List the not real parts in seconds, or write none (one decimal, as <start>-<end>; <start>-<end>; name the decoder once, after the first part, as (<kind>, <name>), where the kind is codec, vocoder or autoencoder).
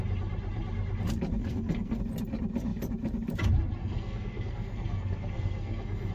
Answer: 1.4-2.0 (codec, SNAC); 3.8-6.1